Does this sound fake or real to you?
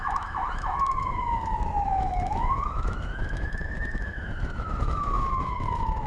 fake